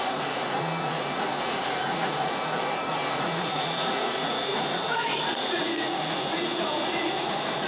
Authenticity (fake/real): fake